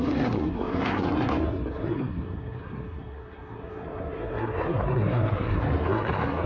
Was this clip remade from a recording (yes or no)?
yes